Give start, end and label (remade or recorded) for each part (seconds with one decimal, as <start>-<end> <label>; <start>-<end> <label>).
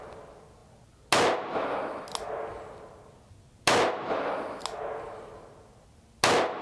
0.0-6.6 recorded